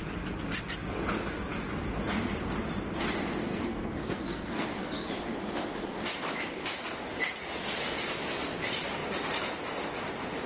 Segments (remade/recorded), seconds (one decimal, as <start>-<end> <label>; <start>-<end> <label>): 0.0-3.4 recorded; 3.4-5.1 remade; 5.1-10.5 recorded